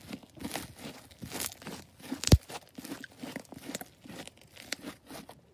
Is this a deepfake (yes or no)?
no